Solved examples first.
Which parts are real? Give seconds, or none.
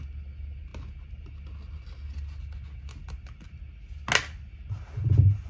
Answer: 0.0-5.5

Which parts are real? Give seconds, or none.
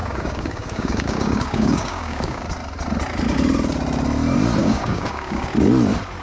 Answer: 2.4-4.6; 5.5-6.2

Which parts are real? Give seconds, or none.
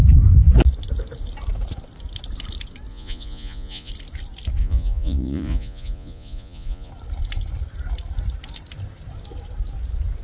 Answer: 0.0-2.9; 3.9-4.6; 6.9-10.2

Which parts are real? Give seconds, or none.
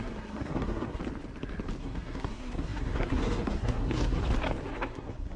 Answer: 1.0-1.8; 4.2-4.7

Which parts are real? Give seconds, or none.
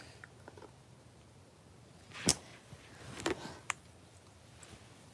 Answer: 0.0-2.3; 2.9-5.1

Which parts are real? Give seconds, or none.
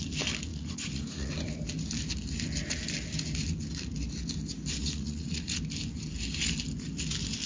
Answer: 0.0-0.5; 1.3-4.8; 5.6-7.5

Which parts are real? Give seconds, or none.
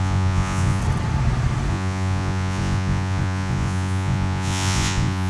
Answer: 0.8-1.7